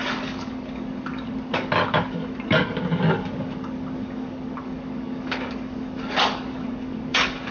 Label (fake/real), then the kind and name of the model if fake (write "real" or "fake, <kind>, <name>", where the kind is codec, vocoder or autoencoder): fake, codec, DAC